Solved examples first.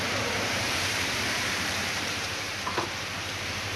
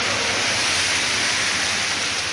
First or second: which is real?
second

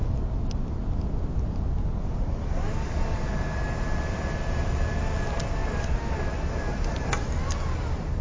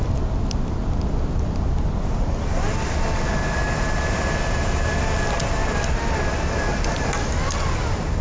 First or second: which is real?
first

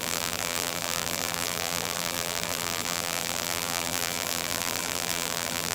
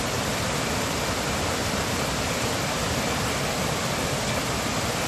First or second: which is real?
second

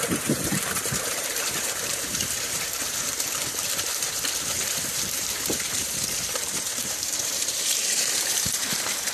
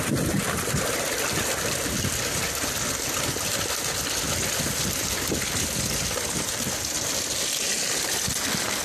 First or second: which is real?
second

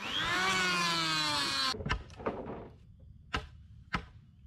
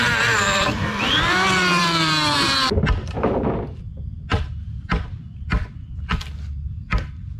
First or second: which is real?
first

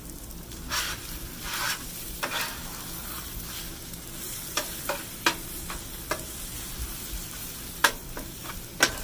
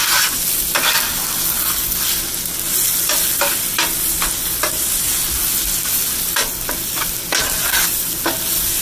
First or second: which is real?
second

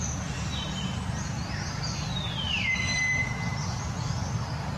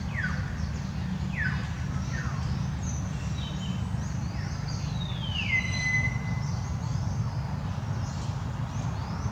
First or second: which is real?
second